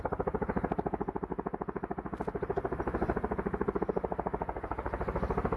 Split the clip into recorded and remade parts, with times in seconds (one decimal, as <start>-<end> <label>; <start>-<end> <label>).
0.0-1.3 remade; 1.3-3.8 recorded; 3.8-5.6 remade